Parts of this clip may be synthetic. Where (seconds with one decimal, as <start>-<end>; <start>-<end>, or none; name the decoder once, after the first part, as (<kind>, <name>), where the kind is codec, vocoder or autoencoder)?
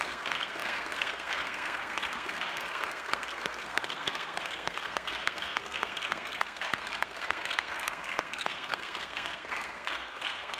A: 0.0-10.6 (codec, SNAC)